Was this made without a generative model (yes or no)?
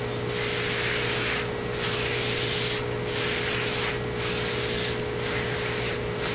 yes